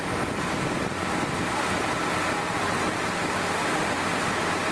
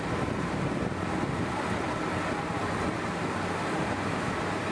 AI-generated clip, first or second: second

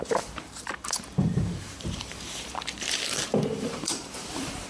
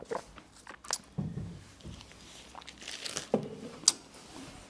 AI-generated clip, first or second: first